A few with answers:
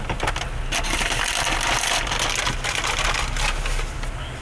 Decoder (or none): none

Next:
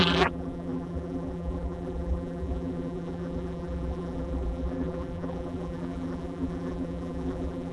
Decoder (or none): vocoder, BigVGAN v2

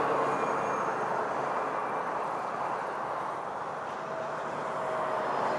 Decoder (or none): none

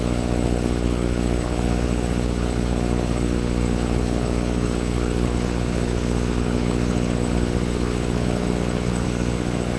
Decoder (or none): codec, HILCodec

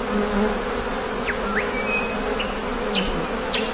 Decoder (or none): none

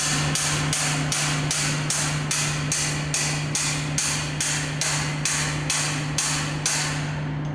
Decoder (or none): none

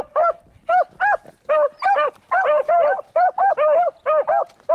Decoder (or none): none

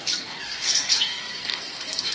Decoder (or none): codec, SNAC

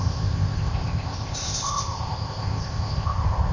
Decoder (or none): codec, ZipCodec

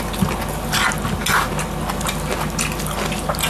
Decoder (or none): none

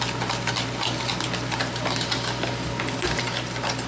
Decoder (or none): none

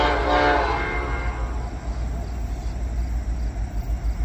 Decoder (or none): none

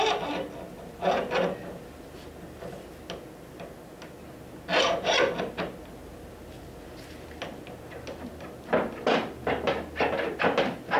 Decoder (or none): none